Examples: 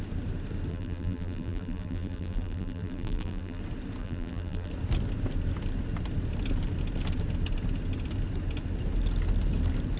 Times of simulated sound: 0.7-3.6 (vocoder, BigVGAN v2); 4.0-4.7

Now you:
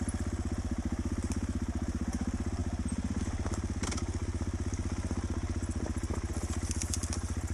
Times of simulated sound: 2.6-3.2 (vocoder, BigVGAN v2)

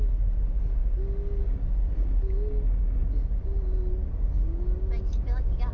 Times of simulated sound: 3.0-3.6 (vocoder, BigVGAN v2)